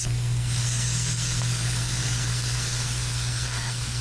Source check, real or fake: fake